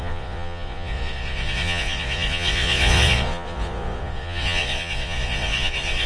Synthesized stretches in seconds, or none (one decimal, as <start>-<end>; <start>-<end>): 0.0-6.1